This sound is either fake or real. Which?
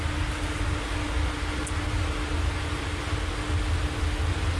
real